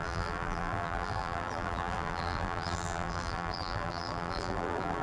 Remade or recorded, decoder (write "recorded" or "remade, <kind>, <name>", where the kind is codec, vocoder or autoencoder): remade, vocoder, BigVGAN v2